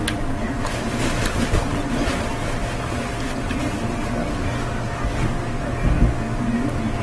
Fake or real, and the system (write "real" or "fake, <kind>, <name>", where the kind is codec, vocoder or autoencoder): real